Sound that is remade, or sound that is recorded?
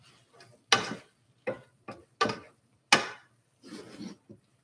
recorded